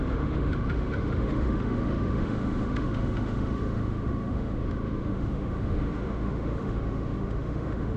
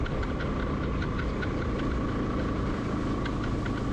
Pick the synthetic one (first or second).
first